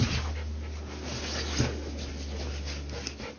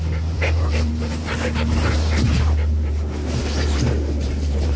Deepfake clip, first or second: second